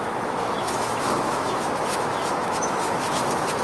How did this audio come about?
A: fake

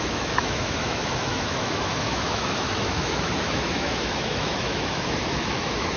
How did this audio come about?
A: fake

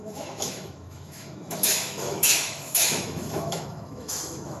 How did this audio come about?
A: fake